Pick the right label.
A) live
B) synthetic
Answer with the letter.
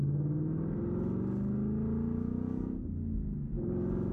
A